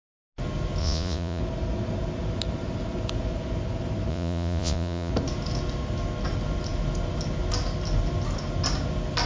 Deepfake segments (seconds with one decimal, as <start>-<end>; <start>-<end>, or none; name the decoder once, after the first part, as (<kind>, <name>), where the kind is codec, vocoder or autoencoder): 0.8-1.4 (vocoder, Vocos); 4.1-5.1